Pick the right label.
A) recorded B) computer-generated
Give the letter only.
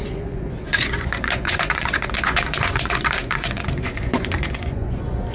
B